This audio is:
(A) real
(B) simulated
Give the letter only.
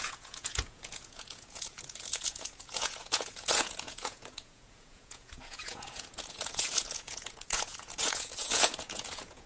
B